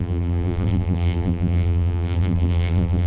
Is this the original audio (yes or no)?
no